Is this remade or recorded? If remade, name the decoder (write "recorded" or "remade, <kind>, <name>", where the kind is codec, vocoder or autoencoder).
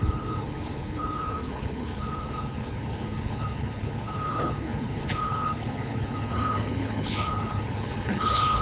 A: remade, codec, HILCodec